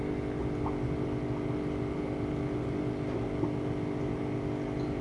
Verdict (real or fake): real